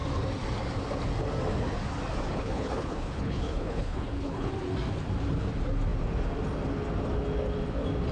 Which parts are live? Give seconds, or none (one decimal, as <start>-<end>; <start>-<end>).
0.0-2.3; 4.5-8.1